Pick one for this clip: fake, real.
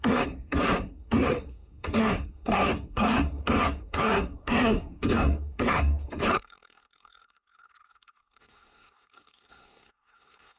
fake